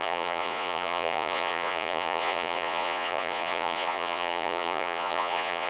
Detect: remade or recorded remade